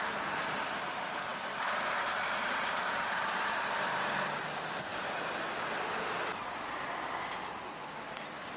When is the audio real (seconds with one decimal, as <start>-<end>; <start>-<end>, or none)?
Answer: 0.0-1.3; 4.1-4.9; 5.4-8.6